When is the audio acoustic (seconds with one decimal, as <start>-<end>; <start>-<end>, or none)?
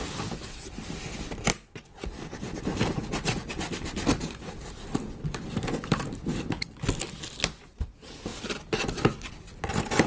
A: 0.0-3.0; 3.5-10.1